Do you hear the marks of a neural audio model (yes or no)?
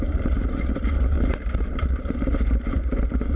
yes